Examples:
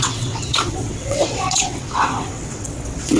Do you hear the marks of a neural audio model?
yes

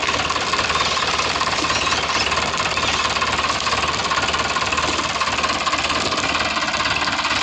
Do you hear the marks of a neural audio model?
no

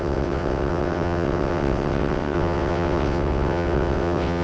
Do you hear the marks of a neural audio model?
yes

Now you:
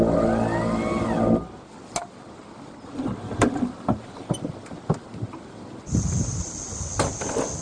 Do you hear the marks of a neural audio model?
no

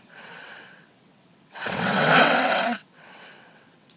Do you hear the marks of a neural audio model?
yes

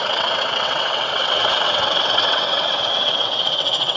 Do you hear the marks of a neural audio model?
yes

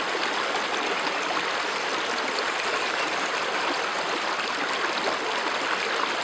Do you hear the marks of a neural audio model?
no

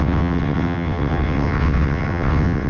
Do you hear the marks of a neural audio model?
yes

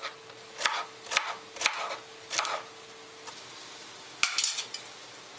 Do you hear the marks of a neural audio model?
no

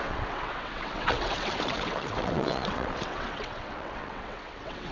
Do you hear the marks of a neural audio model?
yes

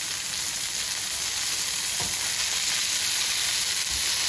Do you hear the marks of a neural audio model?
no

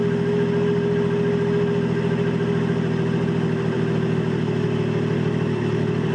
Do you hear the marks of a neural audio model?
no